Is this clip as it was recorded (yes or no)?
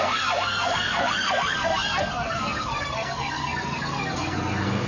no